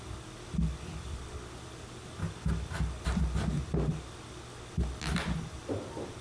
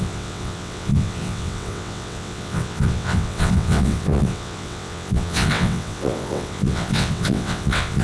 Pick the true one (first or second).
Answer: first